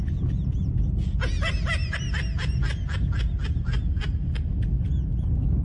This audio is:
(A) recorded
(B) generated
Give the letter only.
A